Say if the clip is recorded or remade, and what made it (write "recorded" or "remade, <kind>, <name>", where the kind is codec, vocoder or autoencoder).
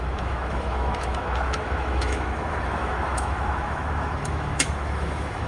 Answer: remade, autoencoder, DAC-VAE